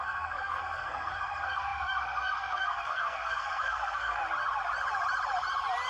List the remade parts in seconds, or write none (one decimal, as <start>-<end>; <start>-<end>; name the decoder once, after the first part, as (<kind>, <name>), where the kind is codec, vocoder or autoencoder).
0.0-4.2 (codec, SNAC)